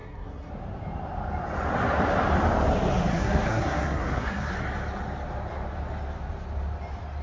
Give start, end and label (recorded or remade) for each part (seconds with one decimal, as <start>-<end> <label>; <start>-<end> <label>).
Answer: 0.0-0.5 remade; 0.5-3.1 recorded; 3.1-4.5 remade; 4.5-7.2 recorded